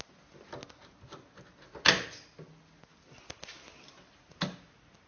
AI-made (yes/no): no